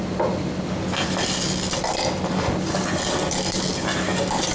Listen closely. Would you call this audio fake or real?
real